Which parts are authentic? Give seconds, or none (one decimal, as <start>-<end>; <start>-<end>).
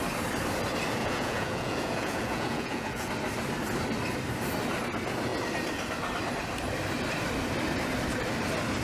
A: 0.0-1.0; 3.1-8.8